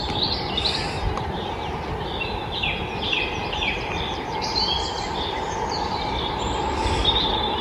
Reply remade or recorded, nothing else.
recorded